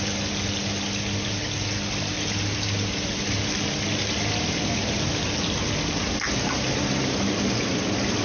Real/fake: real